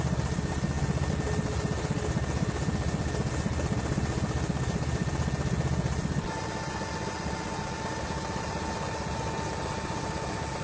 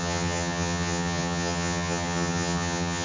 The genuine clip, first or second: first